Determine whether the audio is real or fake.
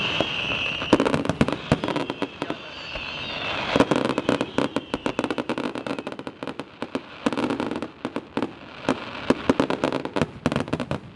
real